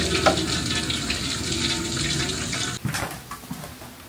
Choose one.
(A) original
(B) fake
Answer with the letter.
A